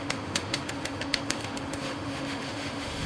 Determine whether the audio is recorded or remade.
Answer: remade